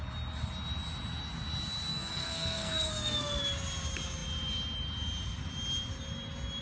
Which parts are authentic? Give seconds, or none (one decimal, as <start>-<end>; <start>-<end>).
0.0-1.9; 3.4-6.6